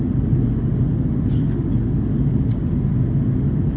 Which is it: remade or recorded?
recorded